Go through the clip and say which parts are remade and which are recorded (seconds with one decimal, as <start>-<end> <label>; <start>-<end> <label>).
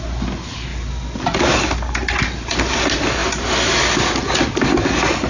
0.0-5.3 recorded